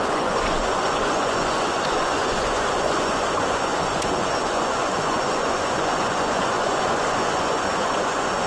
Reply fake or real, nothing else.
fake